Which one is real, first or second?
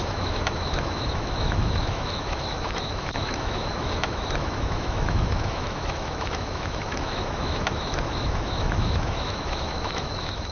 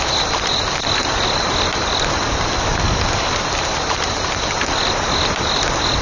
second